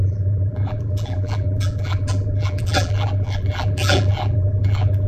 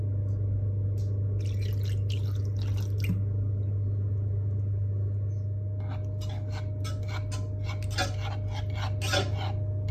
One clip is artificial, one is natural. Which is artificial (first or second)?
first